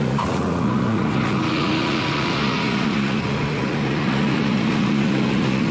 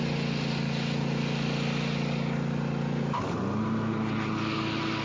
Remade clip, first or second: first